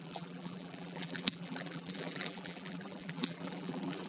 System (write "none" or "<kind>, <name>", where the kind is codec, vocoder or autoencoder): vocoder, BigVGAN v2